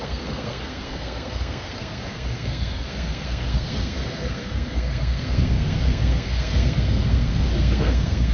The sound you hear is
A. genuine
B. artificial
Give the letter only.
B